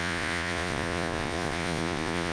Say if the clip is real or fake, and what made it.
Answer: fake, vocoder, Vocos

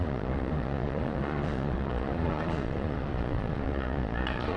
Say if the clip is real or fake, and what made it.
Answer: fake, vocoder, Vocos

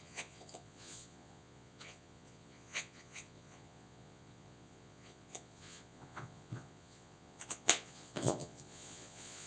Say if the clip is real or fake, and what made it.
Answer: fake, vocoder, Vocos